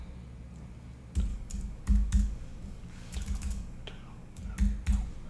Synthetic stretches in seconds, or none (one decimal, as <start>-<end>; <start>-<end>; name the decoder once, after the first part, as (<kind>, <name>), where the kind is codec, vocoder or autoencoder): 1.3-4.4 (codec, DAC)